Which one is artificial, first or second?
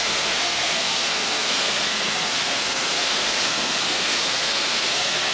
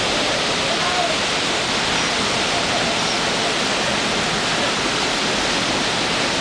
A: first